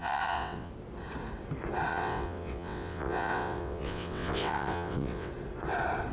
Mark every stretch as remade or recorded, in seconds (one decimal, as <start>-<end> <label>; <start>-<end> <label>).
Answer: 0.0-0.7 remade; 0.7-1.9 recorded; 1.9-5.3 remade; 5.3-6.1 recorded